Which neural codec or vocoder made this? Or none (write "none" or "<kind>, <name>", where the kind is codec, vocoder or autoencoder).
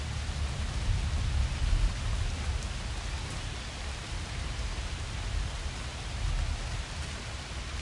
none